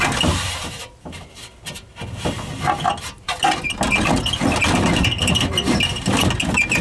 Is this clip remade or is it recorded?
recorded